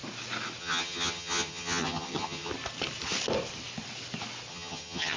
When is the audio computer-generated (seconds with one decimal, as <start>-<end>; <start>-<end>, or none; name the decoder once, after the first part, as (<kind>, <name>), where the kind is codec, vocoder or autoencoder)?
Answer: 0.6-2.5 (vocoder, HiFi-GAN); 4.5-5.2